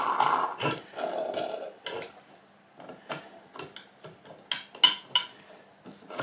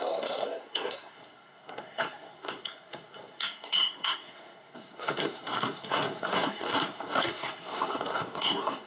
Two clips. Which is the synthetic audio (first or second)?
second